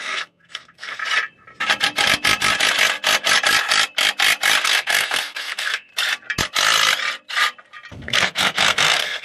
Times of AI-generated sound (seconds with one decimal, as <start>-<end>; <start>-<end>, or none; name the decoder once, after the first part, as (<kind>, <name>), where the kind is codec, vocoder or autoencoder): 0.0-1.0 (codec, SNAC); 4.6-5.9; 7.9-9.2